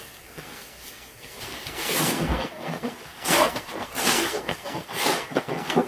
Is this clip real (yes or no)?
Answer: no